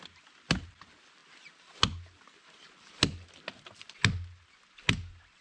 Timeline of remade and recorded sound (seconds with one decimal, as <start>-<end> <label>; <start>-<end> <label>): 0.0-5.4 recorded

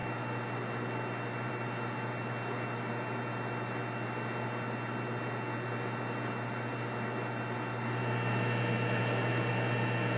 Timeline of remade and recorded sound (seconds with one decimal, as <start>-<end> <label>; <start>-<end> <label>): 0.0-10.2 recorded

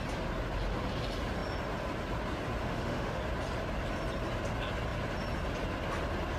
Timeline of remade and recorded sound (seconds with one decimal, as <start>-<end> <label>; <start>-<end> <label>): 0.0-2.6 recorded; 2.6-3.2 remade; 3.2-6.4 recorded

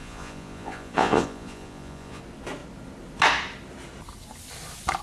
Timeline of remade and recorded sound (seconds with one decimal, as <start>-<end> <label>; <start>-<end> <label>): 0.0-2.2 remade; 2.2-5.0 recorded

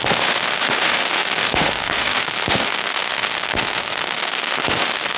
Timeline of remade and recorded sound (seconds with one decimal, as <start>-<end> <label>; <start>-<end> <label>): 0.0-5.2 remade